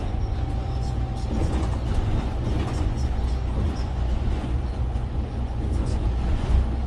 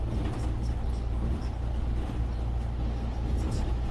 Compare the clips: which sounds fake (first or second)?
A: first